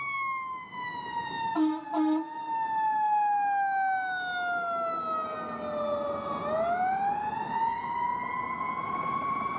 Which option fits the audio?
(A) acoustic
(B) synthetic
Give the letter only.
A